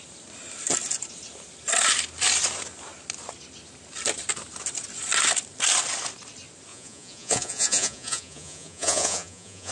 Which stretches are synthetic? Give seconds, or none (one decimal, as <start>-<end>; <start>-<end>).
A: 6.7-9.7